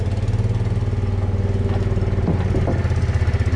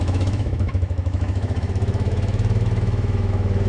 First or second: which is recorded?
first